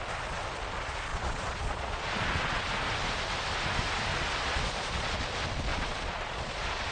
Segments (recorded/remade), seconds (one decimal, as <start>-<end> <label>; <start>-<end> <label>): 0.0-1.1 recorded; 1.1-2.6 remade; 2.6-4.1 recorded; 4.1-5.2 remade; 5.2-5.7 recorded; 5.7-6.9 remade